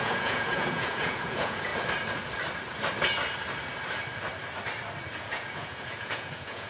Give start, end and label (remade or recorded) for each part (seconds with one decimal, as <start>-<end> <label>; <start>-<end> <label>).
0.0-1.7 remade; 1.7-5.2 recorded; 5.2-6.7 remade

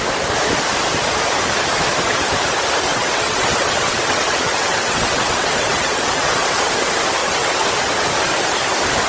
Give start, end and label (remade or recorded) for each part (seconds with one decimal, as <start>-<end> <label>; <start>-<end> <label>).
0.0-2.9 recorded; 2.9-6.7 remade; 6.7-7.2 recorded; 7.2-7.7 remade; 7.7-9.1 recorded